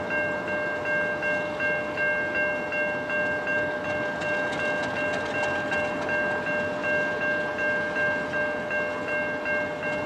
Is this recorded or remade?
recorded